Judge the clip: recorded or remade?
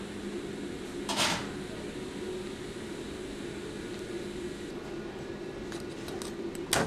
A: recorded